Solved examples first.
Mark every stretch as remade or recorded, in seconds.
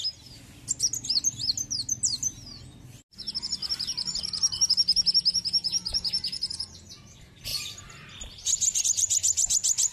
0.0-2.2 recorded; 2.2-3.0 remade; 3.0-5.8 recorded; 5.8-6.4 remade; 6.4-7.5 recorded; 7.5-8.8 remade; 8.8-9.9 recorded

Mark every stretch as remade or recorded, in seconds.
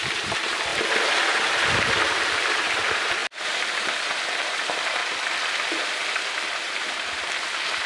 0.0-0.7 remade; 0.7-1.3 recorded; 1.3-5.0 remade; 5.0-5.7 recorded; 5.7-7.9 remade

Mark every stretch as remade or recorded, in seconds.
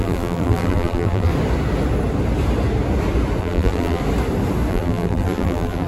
0.0-1.3 remade; 1.3-3.4 recorded; 3.4-4.0 remade; 4.0-4.7 recorded; 4.7-5.9 remade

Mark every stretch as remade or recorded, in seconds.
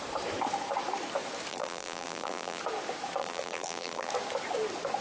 0.0-1.5 recorded; 1.5-2.6 remade; 2.6-3.2 recorded; 3.2-4.1 remade; 4.1-5.0 recorded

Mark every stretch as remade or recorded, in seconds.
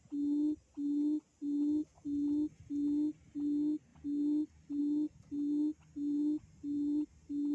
0.0-7.5 recorded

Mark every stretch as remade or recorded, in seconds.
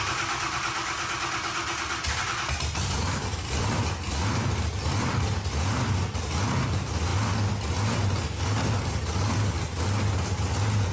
0.0-3.3 recorded; 3.3-4.0 remade; 4.0-10.9 recorded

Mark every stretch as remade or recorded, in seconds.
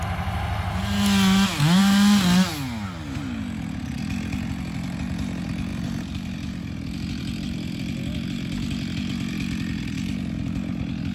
0.0-1.8 recorded; 1.8-2.5 remade; 2.5-5.7 recorded; 5.7-7.2 remade; 7.2-11.1 recorded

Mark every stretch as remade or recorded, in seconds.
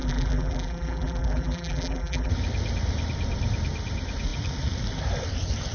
0.0-2.3 remade; 2.3-5.7 recorded